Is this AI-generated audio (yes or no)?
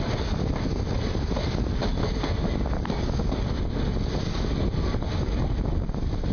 no